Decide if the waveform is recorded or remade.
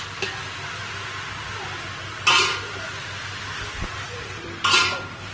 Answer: recorded